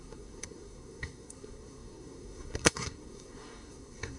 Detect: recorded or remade remade